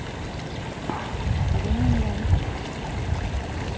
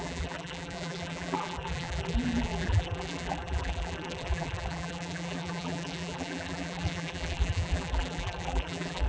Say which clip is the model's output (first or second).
second